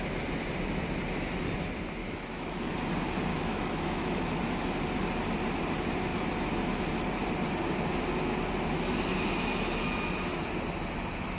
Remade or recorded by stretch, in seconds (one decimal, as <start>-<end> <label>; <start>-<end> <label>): 0.0-2.0 recorded; 2.0-2.7 remade; 2.7-3.3 recorded; 3.3-4.4 remade; 4.4-11.4 recorded